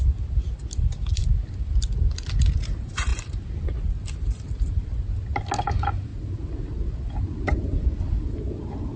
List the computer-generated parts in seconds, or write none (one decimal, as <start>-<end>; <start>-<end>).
1.2-2.0; 3.1-5.0